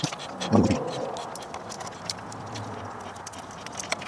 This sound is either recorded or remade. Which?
recorded